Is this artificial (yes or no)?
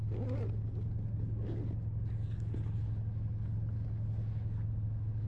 no